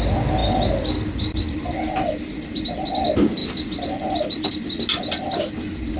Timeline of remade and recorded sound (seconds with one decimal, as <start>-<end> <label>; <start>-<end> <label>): 0.0-6.0 recorded